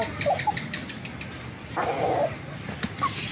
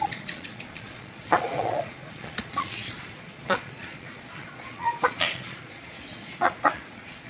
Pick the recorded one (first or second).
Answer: first